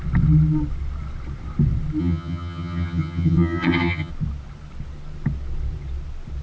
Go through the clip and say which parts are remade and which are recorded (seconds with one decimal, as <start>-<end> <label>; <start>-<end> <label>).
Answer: 0.0-2.0 recorded; 2.0-4.1 remade; 4.1-6.4 recorded